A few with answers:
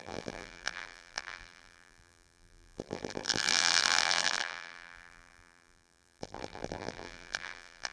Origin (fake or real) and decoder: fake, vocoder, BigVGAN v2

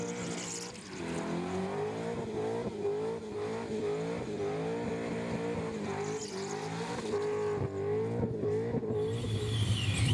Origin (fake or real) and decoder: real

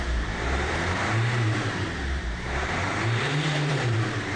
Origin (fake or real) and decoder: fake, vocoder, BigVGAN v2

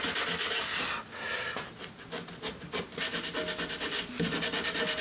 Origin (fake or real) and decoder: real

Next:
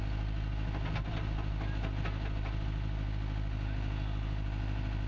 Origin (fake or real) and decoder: real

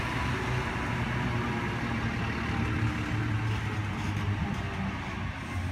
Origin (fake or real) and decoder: real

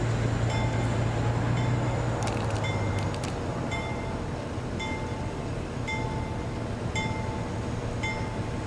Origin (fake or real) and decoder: real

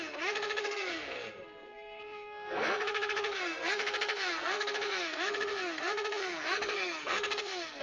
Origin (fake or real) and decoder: fake, codec, SNAC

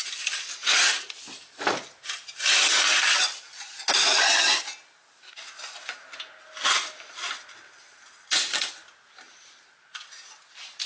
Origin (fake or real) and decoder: real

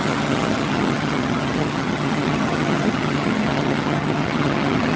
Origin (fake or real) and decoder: fake, vocoder, HiFi-GAN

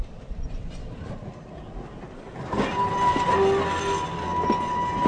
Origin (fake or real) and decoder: real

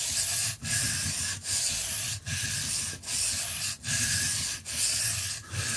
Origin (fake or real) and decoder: real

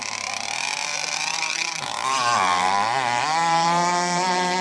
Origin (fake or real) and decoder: fake, vocoder, BigVGAN v2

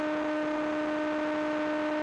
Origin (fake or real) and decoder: real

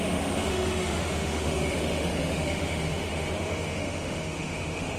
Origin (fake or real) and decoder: fake, autoencoder, DAC-VAE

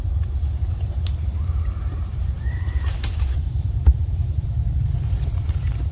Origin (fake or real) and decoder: fake, vocoder, BigVGAN v2